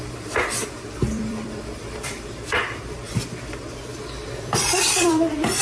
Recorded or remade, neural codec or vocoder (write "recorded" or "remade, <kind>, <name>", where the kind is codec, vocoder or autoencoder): remade, vocoder, BigVGAN v2